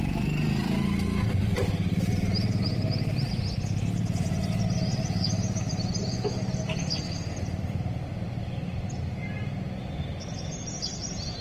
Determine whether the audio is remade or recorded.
recorded